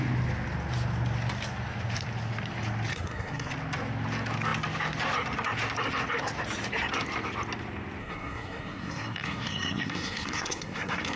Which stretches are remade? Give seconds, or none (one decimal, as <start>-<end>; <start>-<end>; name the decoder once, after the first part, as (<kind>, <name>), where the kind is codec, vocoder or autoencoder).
2.9-3.5 (codec, SNAC); 8.0-11.2